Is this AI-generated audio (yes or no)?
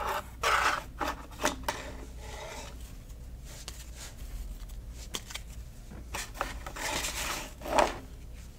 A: no